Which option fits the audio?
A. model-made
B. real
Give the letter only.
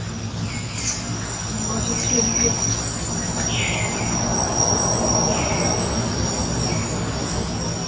B